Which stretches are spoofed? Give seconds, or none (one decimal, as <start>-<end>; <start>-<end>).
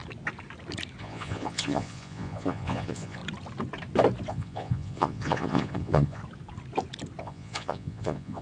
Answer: 1.0-3.2; 4.3-6.2; 7.2-8.4